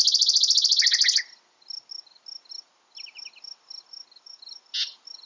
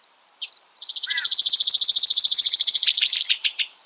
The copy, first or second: second